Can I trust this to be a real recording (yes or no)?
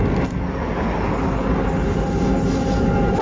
yes